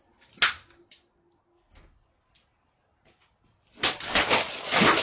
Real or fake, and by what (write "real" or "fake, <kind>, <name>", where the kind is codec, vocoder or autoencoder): real